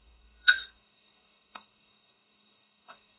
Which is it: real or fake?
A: fake